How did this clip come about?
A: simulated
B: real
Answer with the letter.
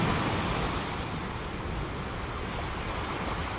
B